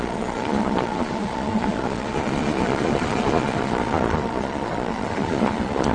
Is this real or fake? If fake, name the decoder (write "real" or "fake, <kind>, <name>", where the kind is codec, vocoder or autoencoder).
fake, vocoder, Vocos